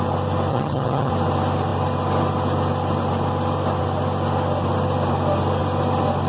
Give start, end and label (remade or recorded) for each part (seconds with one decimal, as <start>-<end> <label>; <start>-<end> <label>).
0.0-0.5 recorded; 0.5-1.1 remade; 1.1-6.3 recorded